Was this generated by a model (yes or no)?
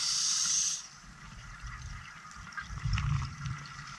no